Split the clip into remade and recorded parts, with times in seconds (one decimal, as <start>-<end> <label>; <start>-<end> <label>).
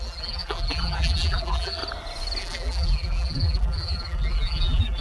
0.0-1.8 remade; 1.8-2.4 recorded; 2.4-5.0 remade